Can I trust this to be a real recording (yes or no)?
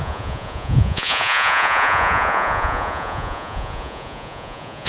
no